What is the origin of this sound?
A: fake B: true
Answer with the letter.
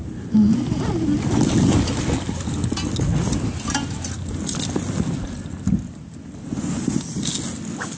B